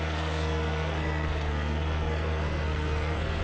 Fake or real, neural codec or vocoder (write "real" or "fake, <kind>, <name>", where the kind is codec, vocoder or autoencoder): fake, codec, SNAC